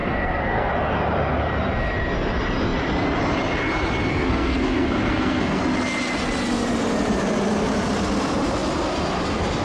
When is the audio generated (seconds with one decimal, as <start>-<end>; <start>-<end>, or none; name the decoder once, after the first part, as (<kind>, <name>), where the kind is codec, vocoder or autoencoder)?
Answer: 0.0-0.7 (codec, SNAC); 4.1-5.6